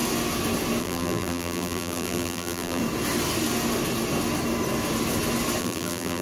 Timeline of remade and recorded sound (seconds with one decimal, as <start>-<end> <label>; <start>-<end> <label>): 0.0-0.8 recorded; 0.8-2.8 remade; 2.8-5.6 recorded; 5.6-6.2 remade

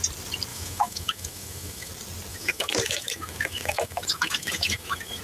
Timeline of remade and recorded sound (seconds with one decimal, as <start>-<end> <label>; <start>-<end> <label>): 0.0-0.5 recorded; 0.5-1.9 remade; 1.9-2.3 recorded; 2.3-5.2 remade

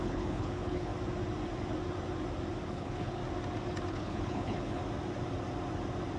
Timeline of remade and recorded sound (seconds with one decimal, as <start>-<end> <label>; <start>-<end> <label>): 0.0-0.9 remade; 0.9-2.7 recorded; 2.7-3.2 remade; 3.2-3.9 recorded; 3.9-4.8 remade; 4.8-6.2 recorded

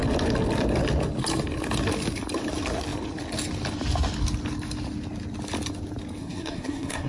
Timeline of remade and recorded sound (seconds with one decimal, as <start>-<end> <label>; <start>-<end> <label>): 0.0-6.2 recorded; 6.2-7.1 remade

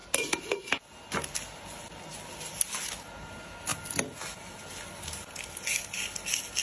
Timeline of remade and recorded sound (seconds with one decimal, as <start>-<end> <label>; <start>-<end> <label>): 0.0-6.6 recorded